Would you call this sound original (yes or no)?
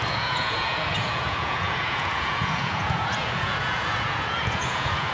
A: no